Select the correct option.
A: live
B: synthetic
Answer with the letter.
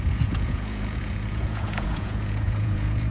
B